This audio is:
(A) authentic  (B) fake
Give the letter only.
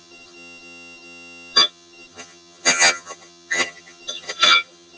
B